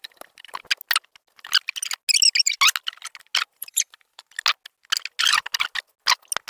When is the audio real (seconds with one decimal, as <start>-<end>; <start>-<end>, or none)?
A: 0.0-3.5; 4.2-6.5